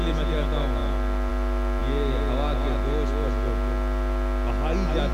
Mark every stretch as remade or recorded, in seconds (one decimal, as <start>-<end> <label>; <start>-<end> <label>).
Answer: 0.0-5.1 recorded